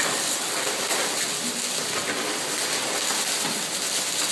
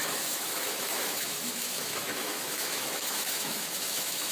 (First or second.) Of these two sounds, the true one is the first